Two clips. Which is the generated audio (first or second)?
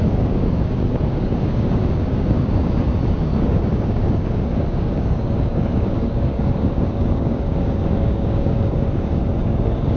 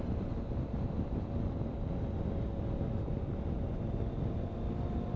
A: first